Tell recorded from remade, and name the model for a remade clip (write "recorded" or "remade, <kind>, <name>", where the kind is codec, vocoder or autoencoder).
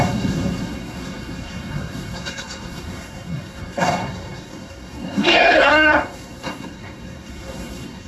remade, codec, SNAC